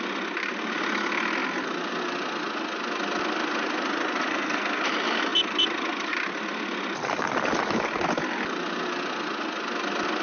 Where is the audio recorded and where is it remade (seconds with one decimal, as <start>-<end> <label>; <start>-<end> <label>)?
0.0-4.3 recorded; 4.3-4.8 remade; 4.8-10.2 recorded